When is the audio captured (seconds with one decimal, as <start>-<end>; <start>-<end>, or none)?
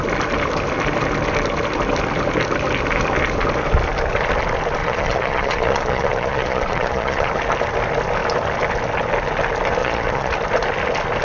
0.0-4.8; 7.3-9.8; 10.3-11.2